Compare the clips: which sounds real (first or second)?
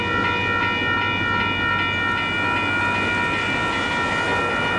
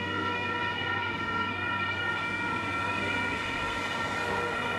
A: first